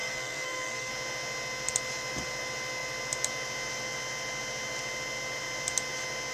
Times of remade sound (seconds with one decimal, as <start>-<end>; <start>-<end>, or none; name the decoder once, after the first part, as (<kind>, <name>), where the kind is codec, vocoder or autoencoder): 0.0-0.9 (codec, SNAC)